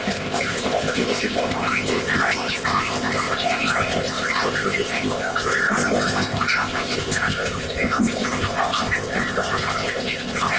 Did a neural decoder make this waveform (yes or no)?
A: yes